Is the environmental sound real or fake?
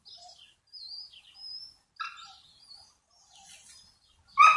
real